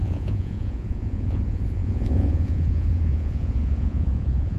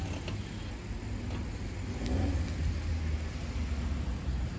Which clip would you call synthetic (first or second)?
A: first